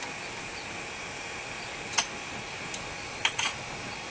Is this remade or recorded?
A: recorded